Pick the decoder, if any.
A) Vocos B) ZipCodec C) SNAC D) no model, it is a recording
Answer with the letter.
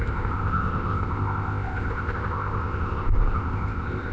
B